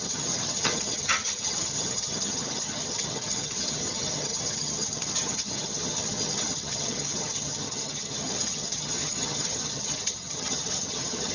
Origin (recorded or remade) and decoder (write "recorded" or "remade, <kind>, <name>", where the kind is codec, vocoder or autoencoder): remade, vocoder, HiFi-GAN